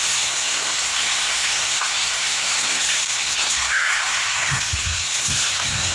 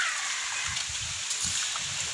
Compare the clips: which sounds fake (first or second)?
first